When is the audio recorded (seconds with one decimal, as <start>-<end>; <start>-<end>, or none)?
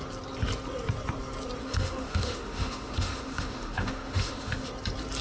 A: 0.0-1.6; 4.7-5.2